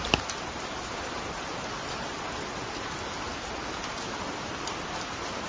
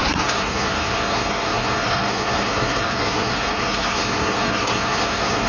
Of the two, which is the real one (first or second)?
first